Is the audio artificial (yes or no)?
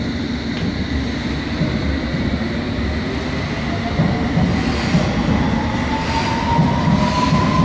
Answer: no